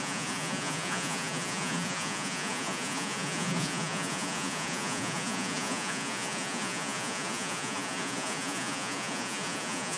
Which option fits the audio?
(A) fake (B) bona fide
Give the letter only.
A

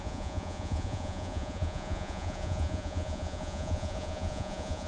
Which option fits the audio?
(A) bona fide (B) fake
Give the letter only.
B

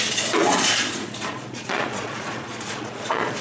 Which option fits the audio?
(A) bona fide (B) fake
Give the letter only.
B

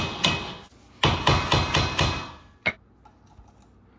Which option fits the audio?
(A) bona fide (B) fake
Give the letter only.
A